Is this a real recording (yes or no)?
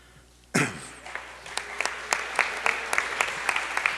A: yes